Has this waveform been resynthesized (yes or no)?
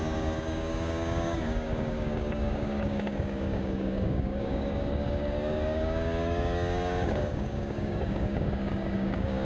yes